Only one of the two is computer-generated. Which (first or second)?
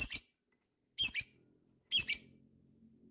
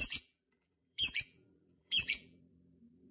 second